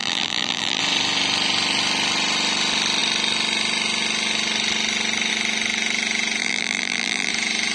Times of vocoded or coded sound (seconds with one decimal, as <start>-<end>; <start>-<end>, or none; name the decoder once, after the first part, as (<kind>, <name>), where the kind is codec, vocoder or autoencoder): 0.0-0.8 (vocoder, BigVGAN v2); 6.4-7.3